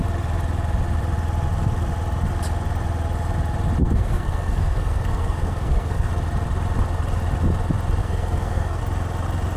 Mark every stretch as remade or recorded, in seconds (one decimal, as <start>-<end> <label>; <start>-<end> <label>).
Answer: 0.0-3.8 recorded; 3.8-6.1 remade; 6.1-8.0 recorded; 8.0-8.8 remade; 8.8-9.6 recorded